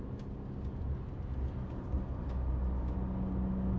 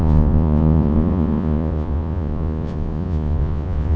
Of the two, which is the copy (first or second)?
second